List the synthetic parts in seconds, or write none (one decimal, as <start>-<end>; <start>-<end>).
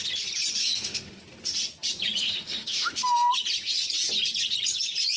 0.6-1.2; 2.2-3.3